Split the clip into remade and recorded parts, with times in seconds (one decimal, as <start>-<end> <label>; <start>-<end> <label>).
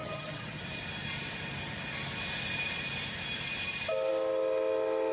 0.0-0.6 remade; 0.6-5.1 recorded